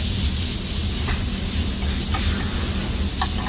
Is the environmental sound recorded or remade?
recorded